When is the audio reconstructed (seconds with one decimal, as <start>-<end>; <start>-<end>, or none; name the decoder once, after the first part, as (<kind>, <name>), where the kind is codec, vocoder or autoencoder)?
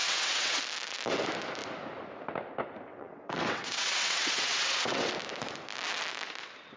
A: 0.0-0.6 (vocoder, WaveNeXt); 2.9-5.1